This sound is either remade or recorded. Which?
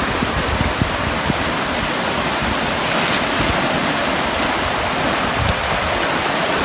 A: recorded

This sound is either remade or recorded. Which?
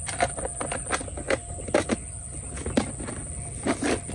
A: recorded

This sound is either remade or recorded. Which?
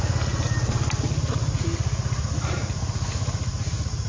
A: recorded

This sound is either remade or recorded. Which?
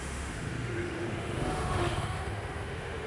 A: remade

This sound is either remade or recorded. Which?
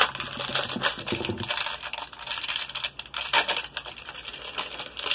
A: remade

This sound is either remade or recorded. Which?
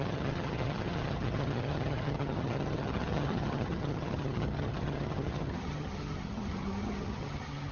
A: remade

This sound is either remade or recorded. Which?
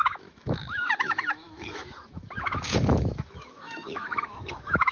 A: remade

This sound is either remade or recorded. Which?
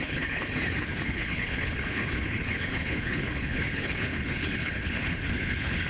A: remade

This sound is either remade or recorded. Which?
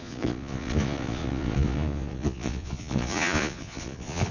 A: remade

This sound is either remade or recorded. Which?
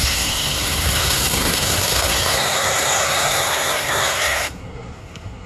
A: remade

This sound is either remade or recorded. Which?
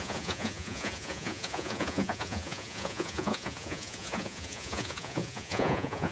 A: remade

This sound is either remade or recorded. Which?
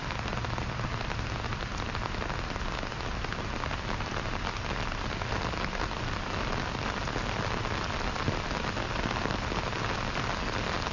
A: recorded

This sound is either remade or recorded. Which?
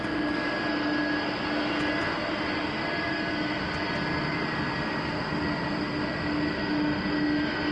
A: recorded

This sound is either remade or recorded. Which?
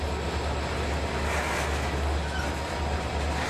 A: recorded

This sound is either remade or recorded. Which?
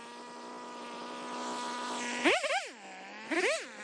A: recorded